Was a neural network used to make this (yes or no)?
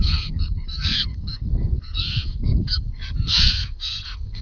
yes